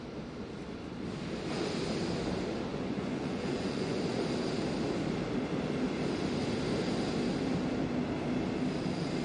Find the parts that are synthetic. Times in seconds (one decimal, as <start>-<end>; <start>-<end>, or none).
2.7-4.0